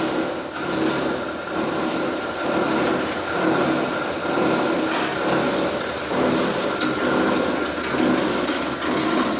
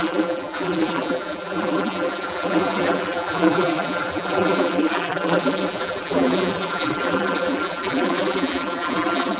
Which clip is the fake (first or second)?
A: second